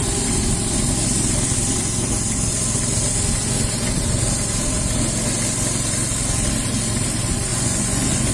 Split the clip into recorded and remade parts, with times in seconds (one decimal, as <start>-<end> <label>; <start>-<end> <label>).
0.0-7.5 recorded; 7.5-8.3 remade